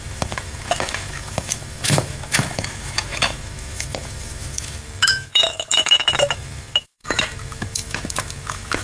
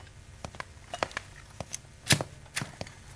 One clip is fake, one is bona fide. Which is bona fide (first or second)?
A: second